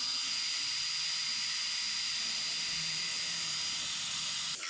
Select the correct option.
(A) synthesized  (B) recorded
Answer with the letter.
B